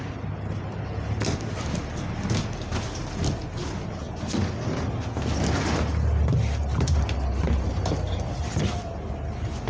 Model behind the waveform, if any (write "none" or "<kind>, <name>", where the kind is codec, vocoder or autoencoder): none